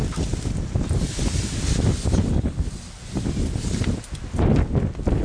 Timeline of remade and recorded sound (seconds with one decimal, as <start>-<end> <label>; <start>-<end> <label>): 0.0-5.2 recorded